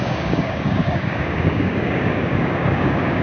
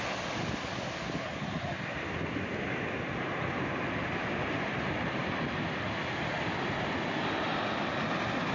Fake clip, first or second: first